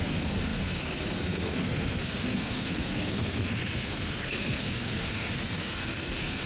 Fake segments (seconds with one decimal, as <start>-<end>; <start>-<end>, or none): 0.0-6.5